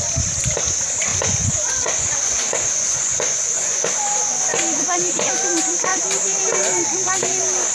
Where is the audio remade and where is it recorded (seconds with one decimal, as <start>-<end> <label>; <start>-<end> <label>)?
0.0-1.1 recorded; 1.1-3.8 remade; 3.8-7.7 recorded